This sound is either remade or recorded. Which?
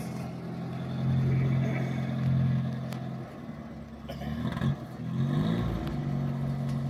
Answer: recorded